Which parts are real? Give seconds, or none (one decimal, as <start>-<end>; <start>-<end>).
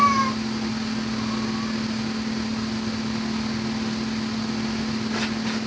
0.0-5.7